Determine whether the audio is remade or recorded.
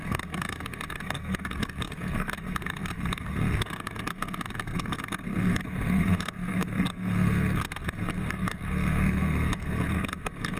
remade